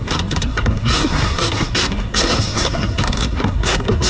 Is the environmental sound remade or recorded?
remade